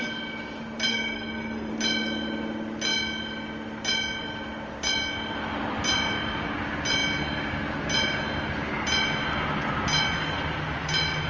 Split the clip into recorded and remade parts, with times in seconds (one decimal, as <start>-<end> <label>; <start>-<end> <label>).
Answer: 0.0-0.9 recorded; 0.9-1.7 remade; 1.7-11.3 recorded